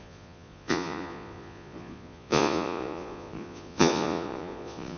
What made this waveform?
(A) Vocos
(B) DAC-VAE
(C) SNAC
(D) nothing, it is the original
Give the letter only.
A